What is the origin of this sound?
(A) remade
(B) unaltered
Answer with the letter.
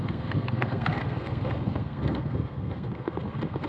A